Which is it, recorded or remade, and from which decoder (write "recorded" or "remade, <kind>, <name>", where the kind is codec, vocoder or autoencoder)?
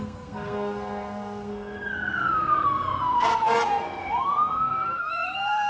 remade, codec, SNAC